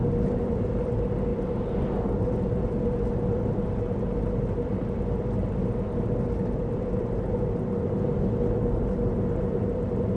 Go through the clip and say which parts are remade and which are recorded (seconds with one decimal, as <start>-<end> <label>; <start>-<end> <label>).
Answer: 0.0-10.2 recorded